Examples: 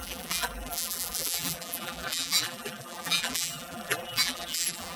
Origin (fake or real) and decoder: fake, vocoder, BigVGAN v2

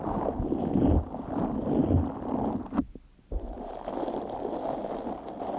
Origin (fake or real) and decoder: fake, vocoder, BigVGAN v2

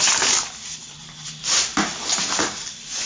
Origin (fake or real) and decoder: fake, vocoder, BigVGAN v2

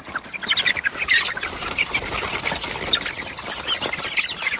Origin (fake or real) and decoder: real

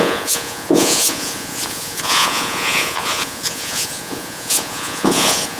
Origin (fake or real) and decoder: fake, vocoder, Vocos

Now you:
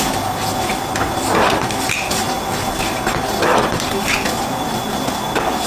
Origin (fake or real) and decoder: real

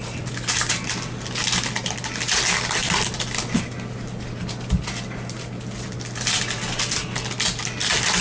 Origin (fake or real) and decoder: real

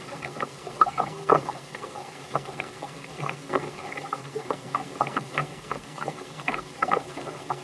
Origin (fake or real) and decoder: fake, codec, SNAC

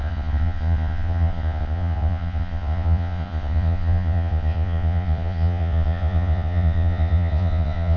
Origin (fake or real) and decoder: fake, vocoder, Vocos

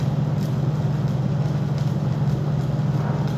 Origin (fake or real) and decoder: real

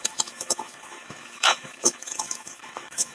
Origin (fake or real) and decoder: fake, autoencoder, DAC-VAE